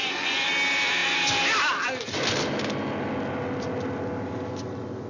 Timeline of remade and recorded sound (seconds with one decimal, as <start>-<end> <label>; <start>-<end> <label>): 0.0-0.5 remade; 0.5-5.1 recorded